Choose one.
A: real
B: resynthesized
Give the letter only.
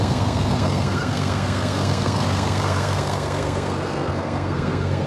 B